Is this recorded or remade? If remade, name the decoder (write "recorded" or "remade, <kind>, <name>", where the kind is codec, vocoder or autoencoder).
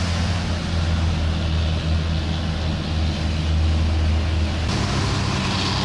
recorded